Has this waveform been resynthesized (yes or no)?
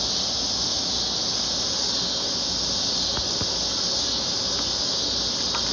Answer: no